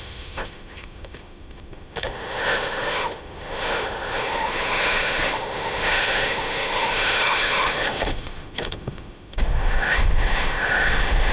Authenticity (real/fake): fake